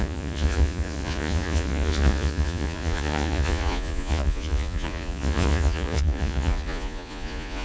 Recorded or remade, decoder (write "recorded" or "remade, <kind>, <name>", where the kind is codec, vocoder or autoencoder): remade, vocoder, Vocos